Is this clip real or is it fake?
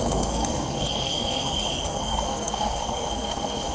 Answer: fake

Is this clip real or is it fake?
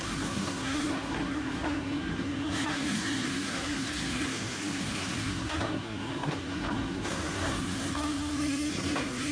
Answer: fake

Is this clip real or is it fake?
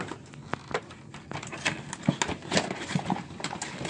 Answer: real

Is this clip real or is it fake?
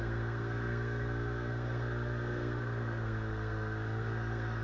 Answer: fake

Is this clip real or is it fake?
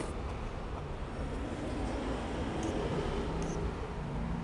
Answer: real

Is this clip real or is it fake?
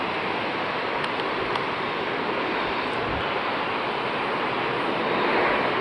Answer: real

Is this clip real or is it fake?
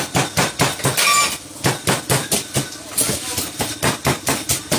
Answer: real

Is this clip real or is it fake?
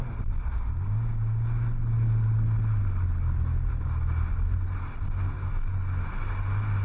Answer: real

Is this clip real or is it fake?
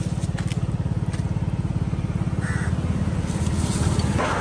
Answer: real